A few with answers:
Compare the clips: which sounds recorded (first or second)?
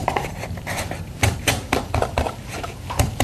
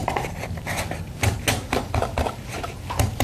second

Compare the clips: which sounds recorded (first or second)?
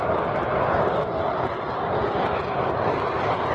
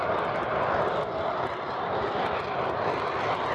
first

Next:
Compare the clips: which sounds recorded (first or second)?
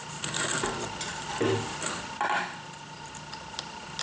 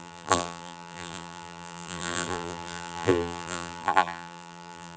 first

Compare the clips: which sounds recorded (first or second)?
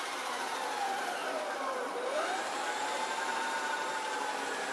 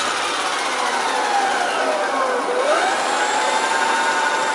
second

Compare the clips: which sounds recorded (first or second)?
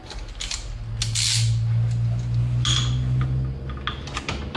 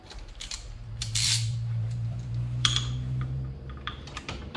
first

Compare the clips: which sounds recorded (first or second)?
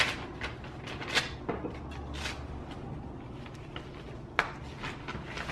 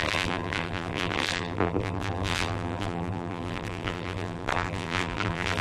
first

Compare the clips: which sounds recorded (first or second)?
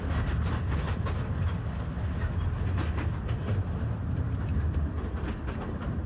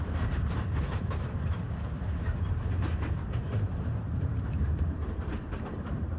first